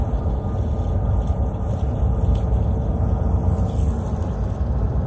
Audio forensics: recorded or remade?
recorded